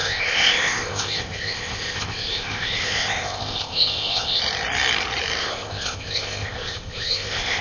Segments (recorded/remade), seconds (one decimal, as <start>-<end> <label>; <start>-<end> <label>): 0.0-4.4 remade; 4.4-5.4 recorded; 5.4-7.6 remade